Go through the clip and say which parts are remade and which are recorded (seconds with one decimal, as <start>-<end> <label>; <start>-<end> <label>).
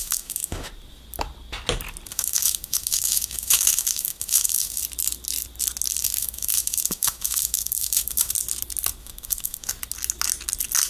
0.0-0.7 remade; 0.7-2.1 recorded; 2.1-4.8 remade; 4.8-6.0 recorded; 6.0-8.3 remade; 8.3-9.0 recorded; 9.0-9.7 remade; 9.7-10.9 recorded